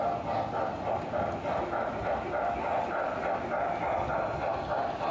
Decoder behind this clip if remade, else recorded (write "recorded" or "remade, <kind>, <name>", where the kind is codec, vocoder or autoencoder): recorded